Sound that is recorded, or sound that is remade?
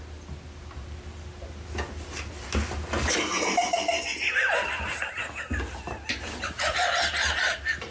recorded